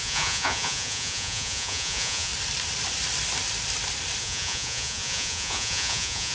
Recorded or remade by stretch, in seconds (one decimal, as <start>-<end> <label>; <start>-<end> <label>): 0.0-2.3 remade; 2.3-4.2 recorded; 4.2-6.3 remade